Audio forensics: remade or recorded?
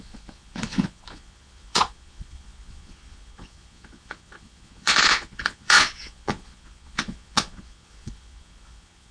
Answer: remade